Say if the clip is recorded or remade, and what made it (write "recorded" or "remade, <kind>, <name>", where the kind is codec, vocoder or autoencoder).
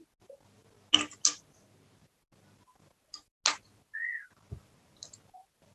recorded